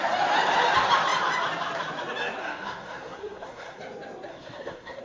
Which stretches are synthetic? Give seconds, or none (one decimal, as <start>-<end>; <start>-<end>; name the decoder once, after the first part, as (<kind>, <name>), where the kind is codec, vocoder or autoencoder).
2.4-3.8 (codec, SNAC); 4.3-5.0